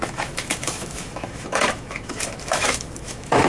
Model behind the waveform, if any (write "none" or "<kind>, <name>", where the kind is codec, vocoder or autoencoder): autoencoder, DAC-VAE